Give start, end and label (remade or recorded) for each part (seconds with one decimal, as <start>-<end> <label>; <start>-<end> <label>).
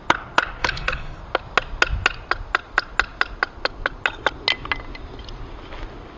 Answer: 0.0-0.6 recorded; 0.6-1.2 remade; 1.2-6.2 recorded